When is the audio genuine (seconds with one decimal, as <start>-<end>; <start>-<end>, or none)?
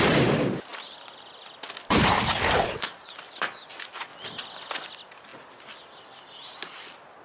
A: 0.0-7.2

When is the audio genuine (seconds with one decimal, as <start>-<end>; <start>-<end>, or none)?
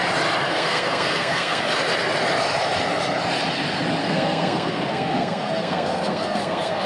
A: 0.0-0.5; 1.6-4.0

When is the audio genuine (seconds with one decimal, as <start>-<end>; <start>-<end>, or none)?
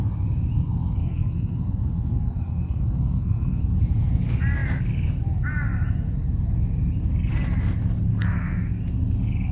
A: 0.0-1.0; 3.6-8.1; 8.7-9.5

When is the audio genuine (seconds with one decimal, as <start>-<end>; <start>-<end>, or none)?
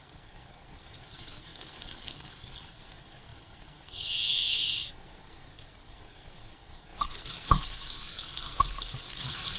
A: none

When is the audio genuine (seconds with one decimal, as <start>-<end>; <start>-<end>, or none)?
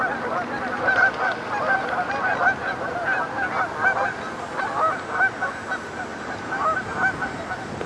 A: 0.0-7.9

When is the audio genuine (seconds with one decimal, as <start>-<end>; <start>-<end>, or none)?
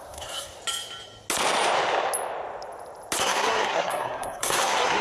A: 0.6-3.2